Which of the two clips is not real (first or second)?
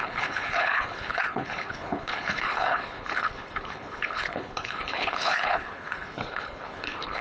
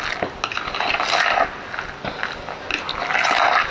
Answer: first